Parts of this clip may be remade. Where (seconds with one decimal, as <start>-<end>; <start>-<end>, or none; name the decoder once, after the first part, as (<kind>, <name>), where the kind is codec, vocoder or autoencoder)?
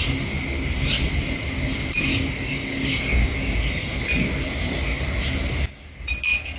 2.1-3.6 (codec, DAC)